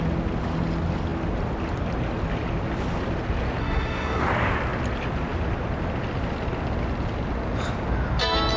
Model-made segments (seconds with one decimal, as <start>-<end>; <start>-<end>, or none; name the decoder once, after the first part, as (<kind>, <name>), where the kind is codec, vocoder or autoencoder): 3.6-4.2 (codec, SNAC)